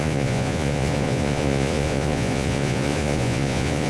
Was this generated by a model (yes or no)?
yes